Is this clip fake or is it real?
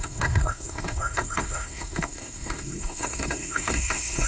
fake